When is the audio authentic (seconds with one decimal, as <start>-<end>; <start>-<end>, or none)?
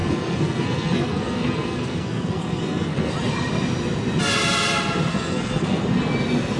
3.1-5.1; 5.8-6.6